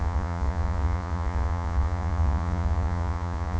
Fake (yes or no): yes